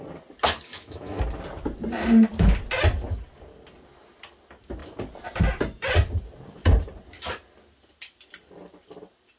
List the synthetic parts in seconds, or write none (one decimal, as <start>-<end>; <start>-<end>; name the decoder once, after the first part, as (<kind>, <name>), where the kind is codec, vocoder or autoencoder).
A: 0.7-1.2 (autoencoder, DAC-VAE)